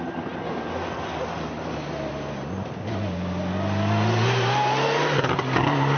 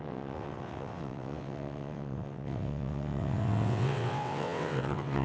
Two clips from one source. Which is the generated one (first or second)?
second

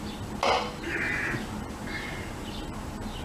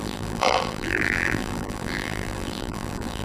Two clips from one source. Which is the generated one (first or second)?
second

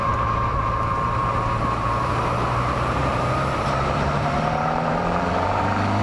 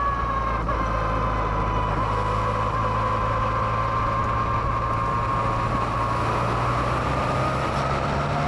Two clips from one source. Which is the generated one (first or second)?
first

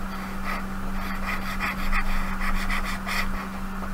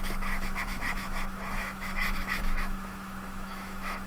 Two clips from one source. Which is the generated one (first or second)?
second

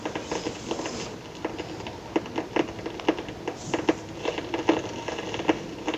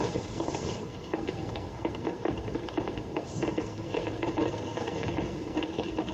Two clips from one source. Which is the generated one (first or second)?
second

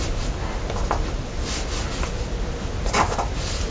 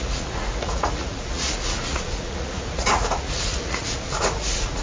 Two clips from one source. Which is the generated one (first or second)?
second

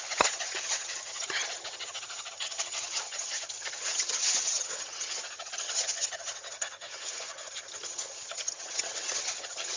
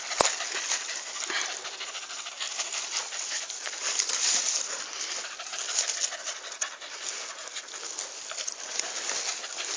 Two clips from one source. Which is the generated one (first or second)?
first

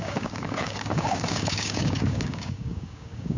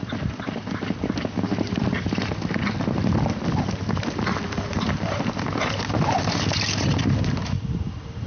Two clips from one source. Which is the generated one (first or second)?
first